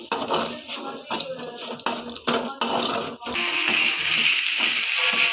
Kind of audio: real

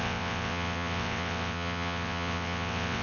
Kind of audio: fake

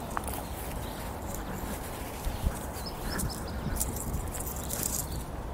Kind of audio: real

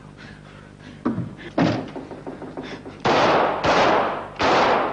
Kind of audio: real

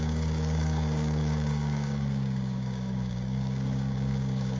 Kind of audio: fake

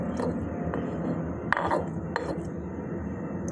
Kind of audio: real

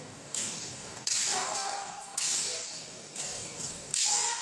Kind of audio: fake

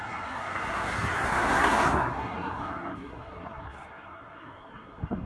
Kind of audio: fake